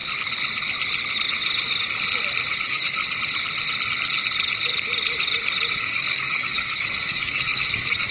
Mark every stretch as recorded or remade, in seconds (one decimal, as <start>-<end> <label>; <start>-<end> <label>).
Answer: 0.0-2.6 recorded; 2.6-3.0 remade; 3.0-5.7 recorded; 5.7-8.1 remade